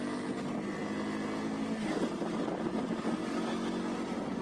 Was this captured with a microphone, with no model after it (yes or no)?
yes